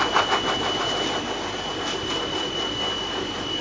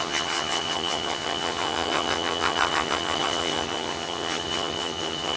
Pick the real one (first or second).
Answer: first